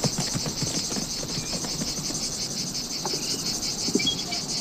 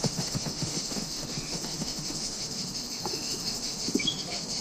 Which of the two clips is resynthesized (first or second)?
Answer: second